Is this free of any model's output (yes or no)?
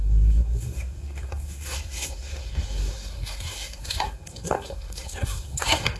no